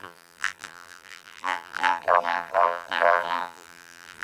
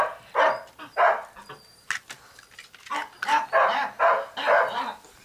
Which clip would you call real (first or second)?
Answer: second